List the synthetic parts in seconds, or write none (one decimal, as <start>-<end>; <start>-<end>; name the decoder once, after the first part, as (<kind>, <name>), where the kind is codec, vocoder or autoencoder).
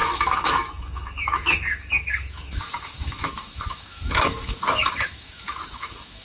0.0-6.2 (autoencoder, DAC-VAE)